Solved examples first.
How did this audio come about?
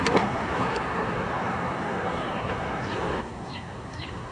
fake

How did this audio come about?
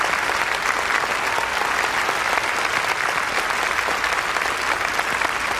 real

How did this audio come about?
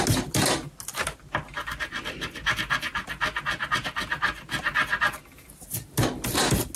real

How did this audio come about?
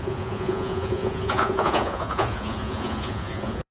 fake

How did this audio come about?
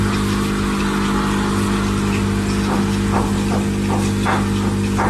real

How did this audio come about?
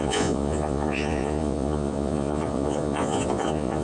fake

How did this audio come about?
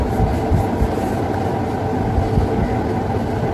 real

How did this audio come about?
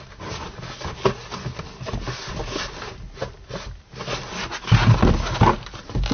real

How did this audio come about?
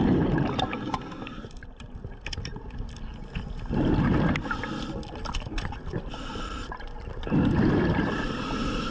real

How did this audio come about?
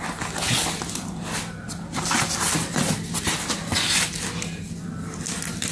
real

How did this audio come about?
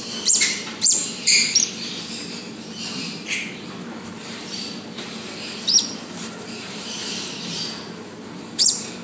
fake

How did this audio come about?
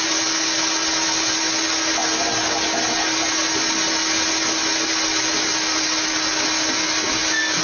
real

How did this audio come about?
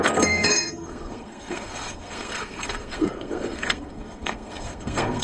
fake